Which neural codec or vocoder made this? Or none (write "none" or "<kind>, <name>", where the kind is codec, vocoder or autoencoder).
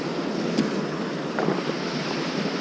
none